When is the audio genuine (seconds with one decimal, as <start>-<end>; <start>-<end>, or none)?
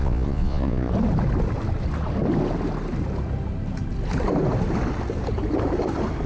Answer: 0.9-6.3